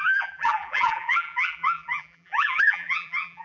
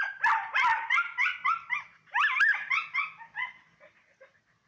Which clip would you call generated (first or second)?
first